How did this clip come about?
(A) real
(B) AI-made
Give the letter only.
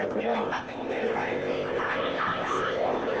B